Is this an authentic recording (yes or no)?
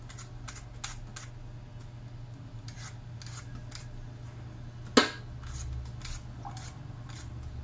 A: yes